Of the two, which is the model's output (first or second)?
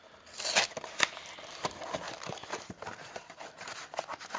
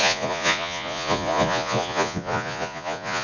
second